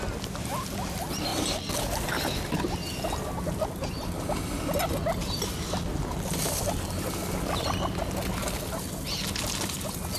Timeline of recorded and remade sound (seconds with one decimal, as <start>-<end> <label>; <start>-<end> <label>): 0.0-10.2 recorded